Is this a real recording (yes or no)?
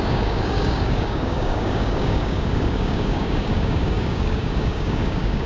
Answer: no